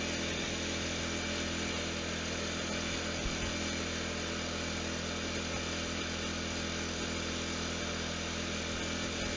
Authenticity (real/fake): real